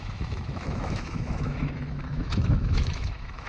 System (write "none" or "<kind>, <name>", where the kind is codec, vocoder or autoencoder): autoencoder, DAC-VAE